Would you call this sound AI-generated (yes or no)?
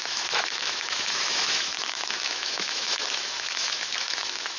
yes